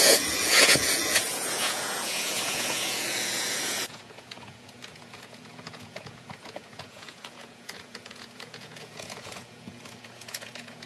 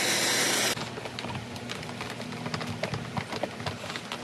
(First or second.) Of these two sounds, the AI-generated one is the first